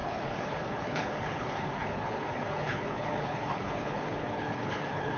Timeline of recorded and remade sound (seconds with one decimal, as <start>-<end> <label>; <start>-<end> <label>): 0.0-5.2 remade